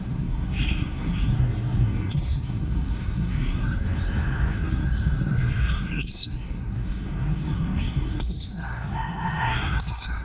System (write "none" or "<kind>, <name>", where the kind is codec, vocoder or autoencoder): codec, SNAC